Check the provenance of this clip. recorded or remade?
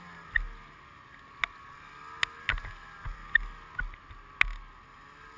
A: recorded